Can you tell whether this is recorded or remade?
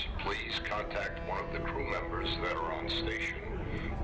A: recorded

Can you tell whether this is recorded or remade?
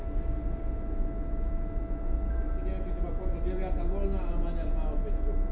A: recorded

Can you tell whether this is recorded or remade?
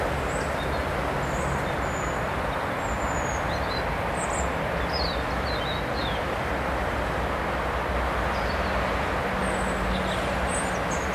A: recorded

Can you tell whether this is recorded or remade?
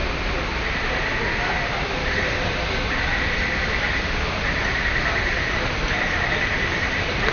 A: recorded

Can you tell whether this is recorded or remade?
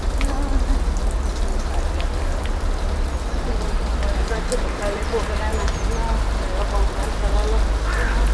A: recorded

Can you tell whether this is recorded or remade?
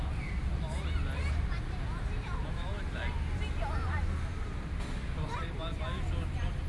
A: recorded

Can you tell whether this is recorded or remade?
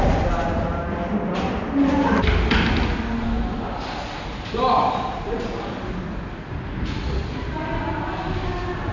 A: recorded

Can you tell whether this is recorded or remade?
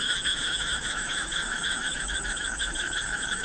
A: remade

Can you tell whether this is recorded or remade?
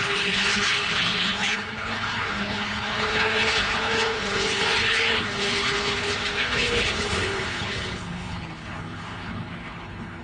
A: remade